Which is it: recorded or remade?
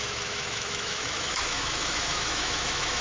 remade